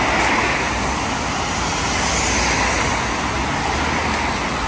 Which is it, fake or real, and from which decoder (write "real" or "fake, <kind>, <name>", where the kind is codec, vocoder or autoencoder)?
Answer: real